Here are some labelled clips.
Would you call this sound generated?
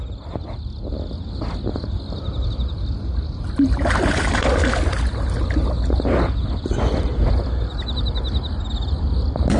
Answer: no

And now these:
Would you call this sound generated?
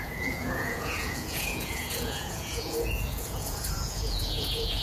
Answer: yes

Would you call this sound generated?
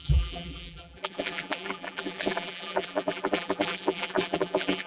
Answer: yes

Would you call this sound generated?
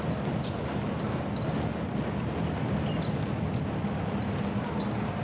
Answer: no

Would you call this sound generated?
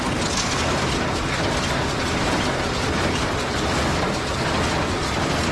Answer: no